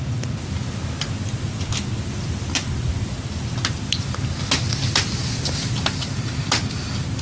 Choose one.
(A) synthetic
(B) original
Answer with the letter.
B